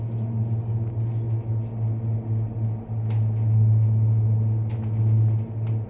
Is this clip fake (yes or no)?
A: no